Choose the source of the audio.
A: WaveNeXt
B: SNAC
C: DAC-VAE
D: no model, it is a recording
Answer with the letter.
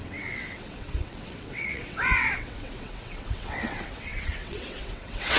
A